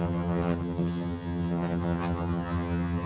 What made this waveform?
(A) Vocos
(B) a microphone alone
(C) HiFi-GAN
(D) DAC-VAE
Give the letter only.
C